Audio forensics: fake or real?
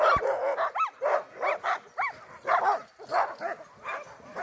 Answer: real